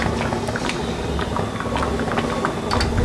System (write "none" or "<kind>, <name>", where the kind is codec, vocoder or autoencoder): none